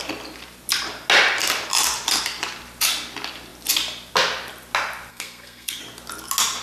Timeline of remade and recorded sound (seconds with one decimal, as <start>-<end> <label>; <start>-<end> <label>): 0.0-5.1 recorded; 5.1-5.8 remade; 5.8-6.6 recorded